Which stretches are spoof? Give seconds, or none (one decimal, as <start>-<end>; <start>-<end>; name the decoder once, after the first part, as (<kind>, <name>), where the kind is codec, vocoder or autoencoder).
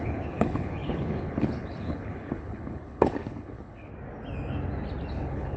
0.0-3.9 (codec, HILCodec); 5.1-5.6